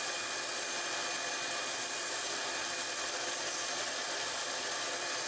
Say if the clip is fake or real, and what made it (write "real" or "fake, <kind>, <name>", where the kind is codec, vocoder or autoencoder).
real